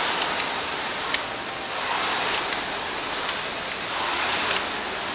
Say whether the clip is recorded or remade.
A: recorded